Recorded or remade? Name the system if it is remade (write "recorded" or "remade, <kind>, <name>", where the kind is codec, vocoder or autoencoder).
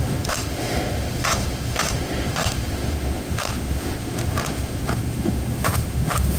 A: remade, autoencoder, DAC-VAE